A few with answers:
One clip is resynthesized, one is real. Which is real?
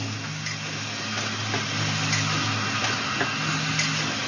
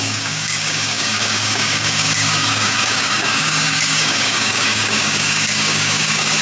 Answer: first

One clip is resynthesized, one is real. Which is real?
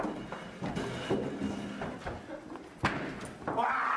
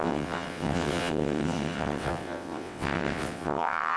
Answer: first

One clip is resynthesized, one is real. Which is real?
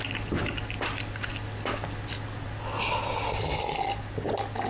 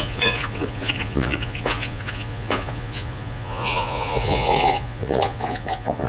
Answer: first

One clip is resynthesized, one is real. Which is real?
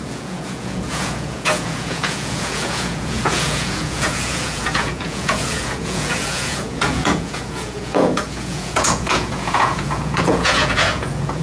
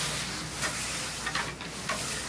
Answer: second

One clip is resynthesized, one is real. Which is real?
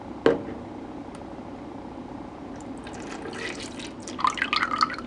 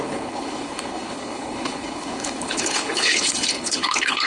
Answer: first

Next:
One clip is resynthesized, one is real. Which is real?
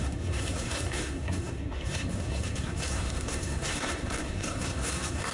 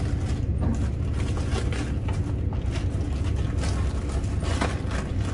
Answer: second